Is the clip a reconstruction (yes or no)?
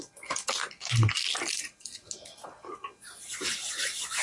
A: no